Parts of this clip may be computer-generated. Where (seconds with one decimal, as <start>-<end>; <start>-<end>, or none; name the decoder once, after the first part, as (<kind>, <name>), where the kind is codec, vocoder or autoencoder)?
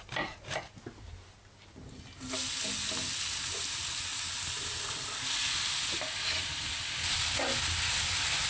none